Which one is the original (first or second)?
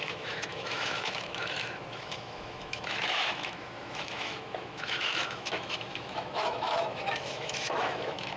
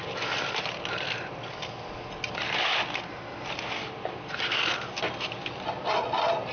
second